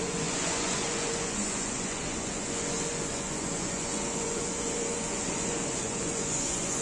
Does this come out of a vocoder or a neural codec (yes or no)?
yes